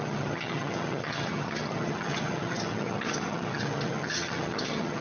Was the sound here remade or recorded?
remade